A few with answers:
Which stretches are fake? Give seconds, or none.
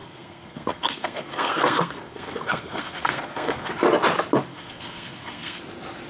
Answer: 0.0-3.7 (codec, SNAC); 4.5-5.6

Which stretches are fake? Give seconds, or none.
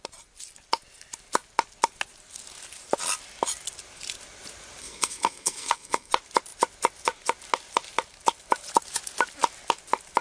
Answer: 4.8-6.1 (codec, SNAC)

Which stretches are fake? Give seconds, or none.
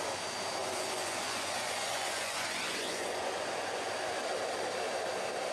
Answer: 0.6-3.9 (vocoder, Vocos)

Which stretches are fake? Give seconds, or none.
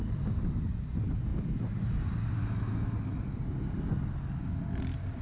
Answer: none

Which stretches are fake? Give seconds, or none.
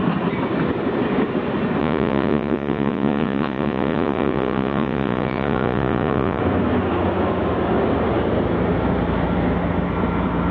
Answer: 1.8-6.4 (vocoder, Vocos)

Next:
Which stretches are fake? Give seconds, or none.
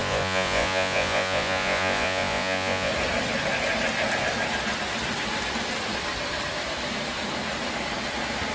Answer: 0.0-2.9 (vocoder, Vocos)